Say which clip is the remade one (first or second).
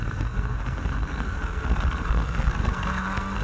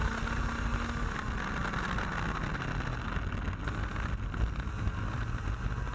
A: first